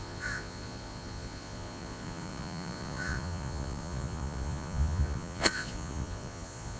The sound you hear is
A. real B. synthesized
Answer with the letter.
B